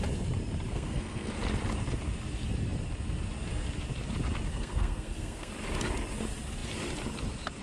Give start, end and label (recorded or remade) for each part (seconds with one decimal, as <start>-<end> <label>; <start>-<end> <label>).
0.0-0.7 recorded; 0.7-1.4 remade; 1.4-4.5 recorded; 4.5-5.5 remade; 5.5-7.6 recorded